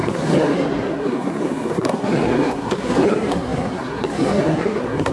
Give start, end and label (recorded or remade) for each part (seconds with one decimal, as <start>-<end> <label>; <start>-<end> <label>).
0.0-5.1 remade

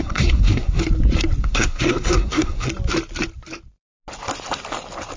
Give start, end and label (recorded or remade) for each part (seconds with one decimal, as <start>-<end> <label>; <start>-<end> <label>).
0.0-0.8 remade; 0.8-1.4 recorded; 1.4-2.7 remade; 2.7-5.2 recorded

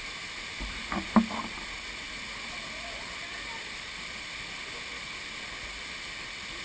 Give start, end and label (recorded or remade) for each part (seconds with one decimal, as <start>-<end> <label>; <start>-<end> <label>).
0.0-6.6 recorded

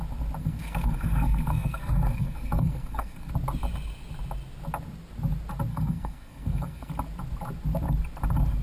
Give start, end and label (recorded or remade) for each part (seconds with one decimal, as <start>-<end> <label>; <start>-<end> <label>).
0.0-0.4 recorded; 0.4-3.3 remade; 3.3-5.7 recorded; 5.7-6.9 remade; 6.9-8.6 recorded

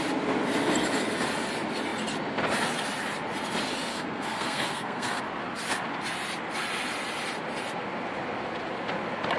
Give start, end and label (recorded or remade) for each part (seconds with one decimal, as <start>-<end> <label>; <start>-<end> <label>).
0.0-3.9 recorded; 3.9-5.2 remade; 5.2-9.4 recorded

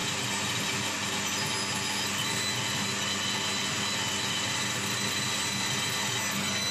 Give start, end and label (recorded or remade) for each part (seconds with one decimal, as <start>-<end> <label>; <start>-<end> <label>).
0.0-6.7 recorded

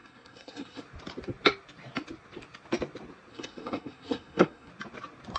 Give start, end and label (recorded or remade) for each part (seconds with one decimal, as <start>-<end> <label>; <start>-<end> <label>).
0.0-0.8 remade; 0.8-3.3 recorded; 3.3-4.7 remade; 4.7-5.4 recorded